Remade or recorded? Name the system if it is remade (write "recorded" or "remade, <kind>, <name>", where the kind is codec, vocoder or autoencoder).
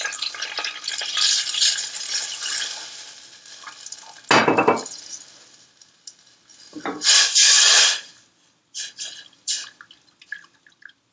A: recorded